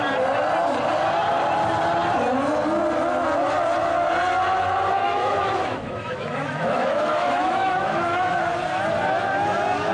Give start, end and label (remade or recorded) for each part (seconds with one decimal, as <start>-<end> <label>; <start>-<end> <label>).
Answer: 0.0-5.0 recorded; 5.0-8.4 remade; 8.4-9.9 recorded